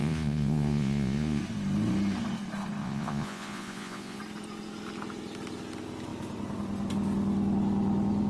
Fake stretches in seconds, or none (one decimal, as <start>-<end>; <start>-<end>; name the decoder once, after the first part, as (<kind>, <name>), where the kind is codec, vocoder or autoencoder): 0.0-1.4 (vocoder, Vocos); 2.8-4.2